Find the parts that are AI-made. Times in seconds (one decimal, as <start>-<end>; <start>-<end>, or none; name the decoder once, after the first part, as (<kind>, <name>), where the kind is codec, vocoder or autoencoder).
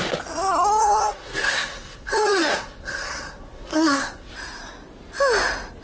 0.8-4.3 (codec, SNAC)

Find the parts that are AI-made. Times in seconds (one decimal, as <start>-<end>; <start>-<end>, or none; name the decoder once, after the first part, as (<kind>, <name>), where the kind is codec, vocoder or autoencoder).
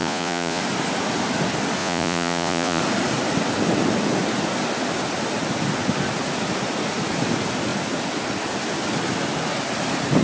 0.0-0.6 (vocoder, Vocos); 1.8-2.8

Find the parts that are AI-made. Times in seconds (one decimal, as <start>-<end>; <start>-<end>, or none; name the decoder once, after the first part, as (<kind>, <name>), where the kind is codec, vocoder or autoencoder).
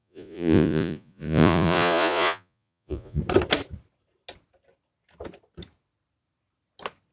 0.0-3.2 (vocoder, Vocos)